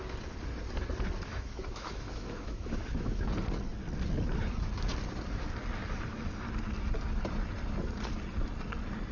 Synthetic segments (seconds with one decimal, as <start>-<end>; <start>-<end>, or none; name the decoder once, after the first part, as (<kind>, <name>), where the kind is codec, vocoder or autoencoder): 1.3-3.3 (autoencoder, DAC-VAE)